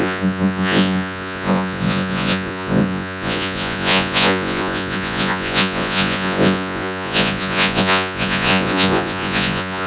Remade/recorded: remade